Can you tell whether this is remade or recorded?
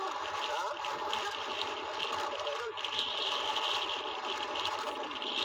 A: remade